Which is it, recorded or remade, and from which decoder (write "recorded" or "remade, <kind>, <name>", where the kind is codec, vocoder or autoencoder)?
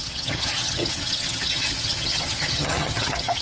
remade, vocoder, HiFi-GAN